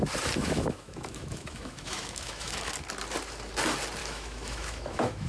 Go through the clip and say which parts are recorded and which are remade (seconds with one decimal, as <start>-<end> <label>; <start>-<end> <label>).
0.0-0.4 recorded; 0.4-2.7 remade; 2.7-4.0 recorded; 4.0-5.3 remade